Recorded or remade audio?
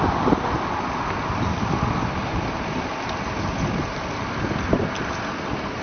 recorded